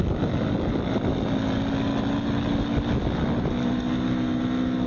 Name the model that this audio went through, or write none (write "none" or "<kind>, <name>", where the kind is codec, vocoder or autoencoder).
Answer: none